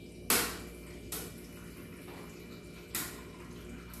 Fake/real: real